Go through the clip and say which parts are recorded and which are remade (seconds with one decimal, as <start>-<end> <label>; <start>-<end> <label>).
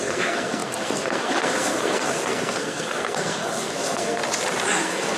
0.0-4.2 remade; 4.2-4.8 recorded; 4.8-5.2 remade